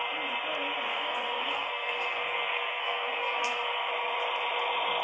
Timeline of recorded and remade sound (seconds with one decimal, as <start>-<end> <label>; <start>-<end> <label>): 0.0-0.9 recorded; 0.9-3.9 remade; 3.9-5.0 recorded